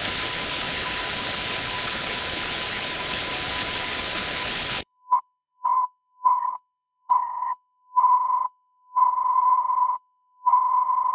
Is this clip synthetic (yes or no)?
yes